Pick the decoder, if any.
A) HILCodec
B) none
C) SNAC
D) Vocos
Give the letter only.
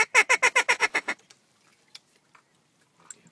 B